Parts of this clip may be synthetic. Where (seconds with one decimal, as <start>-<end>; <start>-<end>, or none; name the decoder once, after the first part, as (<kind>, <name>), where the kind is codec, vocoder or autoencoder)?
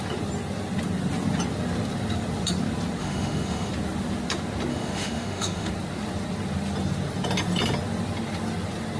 3.0-3.7 (autoencoder, DAC-VAE); 4.7-5.7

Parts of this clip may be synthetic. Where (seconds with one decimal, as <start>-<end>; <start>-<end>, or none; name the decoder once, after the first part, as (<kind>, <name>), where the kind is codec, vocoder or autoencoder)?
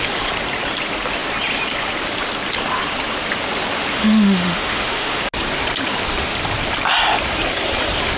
3.9-5.2 (autoencoder, DAC-VAE)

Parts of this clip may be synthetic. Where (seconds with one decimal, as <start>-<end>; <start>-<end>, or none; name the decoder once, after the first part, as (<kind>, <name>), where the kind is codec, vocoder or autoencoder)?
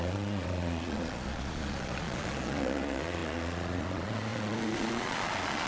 0.0-5.7 (vocoder, Vocos)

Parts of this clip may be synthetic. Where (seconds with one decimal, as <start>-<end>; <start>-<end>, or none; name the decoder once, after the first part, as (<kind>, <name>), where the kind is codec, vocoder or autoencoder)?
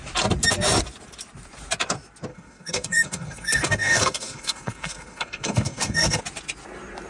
2.3-6.2 (codec, SNAC)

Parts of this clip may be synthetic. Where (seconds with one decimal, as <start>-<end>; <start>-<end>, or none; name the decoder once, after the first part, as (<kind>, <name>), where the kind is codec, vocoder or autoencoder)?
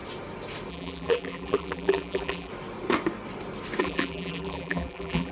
0.7-2.5 (vocoder, BigVGAN v2); 3.8-5.3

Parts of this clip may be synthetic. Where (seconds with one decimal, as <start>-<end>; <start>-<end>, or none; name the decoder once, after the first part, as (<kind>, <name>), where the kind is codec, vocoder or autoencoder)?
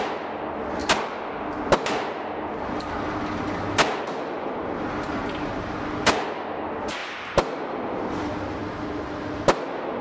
none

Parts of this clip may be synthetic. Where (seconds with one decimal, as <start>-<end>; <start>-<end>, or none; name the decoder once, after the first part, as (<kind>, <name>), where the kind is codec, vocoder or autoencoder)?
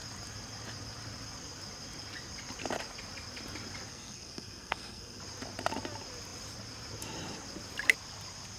3.9-5.2 (codec, SNAC)